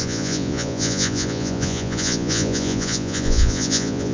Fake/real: fake